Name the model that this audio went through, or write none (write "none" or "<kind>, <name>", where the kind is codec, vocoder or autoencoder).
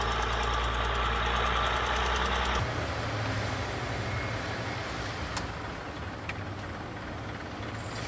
none